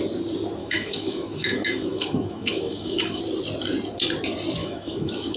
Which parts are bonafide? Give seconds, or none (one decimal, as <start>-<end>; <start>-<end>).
0.0-0.6; 3.2-4.6